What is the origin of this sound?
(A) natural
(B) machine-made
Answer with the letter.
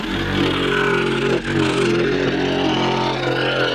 A